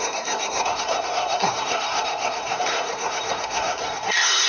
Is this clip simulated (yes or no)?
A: yes